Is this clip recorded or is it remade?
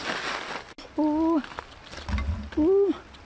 recorded